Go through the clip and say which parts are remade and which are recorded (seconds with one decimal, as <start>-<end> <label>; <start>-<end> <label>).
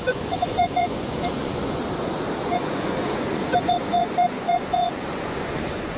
0.0-1.8 remade; 1.8-2.4 recorded; 2.4-6.0 remade